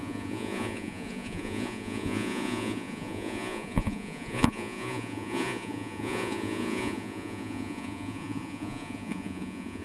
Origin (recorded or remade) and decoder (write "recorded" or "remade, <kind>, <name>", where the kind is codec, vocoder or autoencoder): remade, vocoder, Vocos